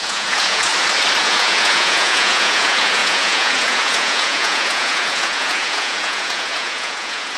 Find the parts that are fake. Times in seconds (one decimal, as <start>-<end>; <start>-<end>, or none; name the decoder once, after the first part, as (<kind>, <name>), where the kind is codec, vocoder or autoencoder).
0.0-0.7 (vocoder, Vocos); 1.2-7.4